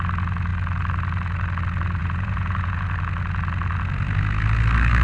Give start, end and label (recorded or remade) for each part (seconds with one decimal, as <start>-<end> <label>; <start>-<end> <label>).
0.0-2.0 recorded; 2.0-2.8 remade; 2.8-5.0 recorded

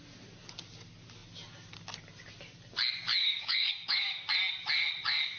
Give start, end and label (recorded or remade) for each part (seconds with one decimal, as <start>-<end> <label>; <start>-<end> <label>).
0.0-3.1 recorded; 3.1-4.3 remade; 4.3-5.4 recorded

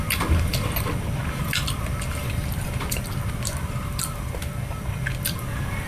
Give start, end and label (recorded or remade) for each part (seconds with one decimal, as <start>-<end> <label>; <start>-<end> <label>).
0.0-2.2 recorded; 2.2-5.9 remade

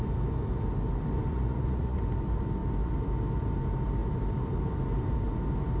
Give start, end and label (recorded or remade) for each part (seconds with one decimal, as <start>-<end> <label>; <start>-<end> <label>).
0.0-1.3 recorded; 1.3-2.0 remade; 2.0-5.8 recorded

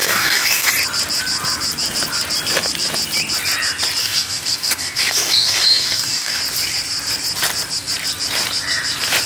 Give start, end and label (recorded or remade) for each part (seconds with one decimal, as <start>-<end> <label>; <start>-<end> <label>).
0.0-0.7 remade; 0.7-4.0 recorded; 4.0-6.4 remade; 6.4-9.3 recorded

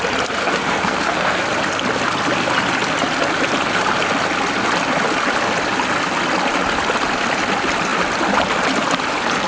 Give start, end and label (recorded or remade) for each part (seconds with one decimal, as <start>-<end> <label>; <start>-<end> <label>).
0.0-0.4 recorded; 0.4-1.4 remade; 1.4-9.5 recorded

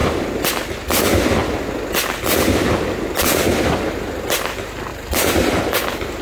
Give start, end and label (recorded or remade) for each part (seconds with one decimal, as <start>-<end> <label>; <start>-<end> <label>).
0.0-0.5 remade; 0.5-4.9 recorded; 4.9-5.6 remade; 5.6-6.2 recorded